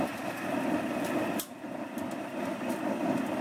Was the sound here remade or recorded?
recorded